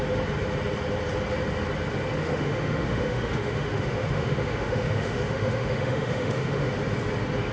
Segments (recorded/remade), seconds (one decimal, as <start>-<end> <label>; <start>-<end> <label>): 0.0-2.2 recorded; 2.2-6.7 remade; 6.7-7.5 recorded